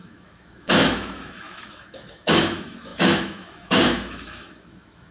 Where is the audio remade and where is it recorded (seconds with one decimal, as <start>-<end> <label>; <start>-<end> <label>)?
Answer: 0.0-5.1 remade